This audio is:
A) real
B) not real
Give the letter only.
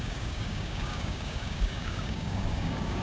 B